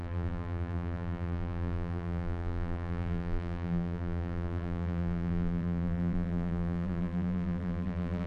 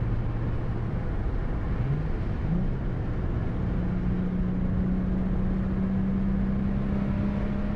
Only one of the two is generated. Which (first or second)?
first